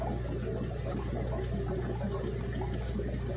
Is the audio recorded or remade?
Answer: recorded